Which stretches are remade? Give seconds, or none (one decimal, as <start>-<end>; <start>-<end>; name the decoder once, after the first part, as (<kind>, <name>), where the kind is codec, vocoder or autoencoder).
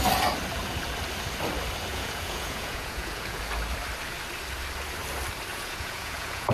1.9-3.4 (vocoder, Vocos); 5.5-6.5